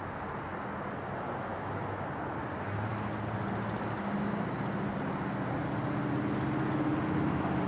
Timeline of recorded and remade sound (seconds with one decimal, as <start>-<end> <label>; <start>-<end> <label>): 0.0-7.7 recorded